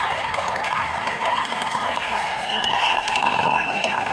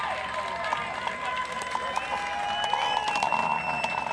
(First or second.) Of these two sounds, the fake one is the first